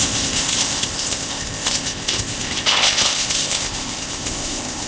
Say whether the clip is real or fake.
fake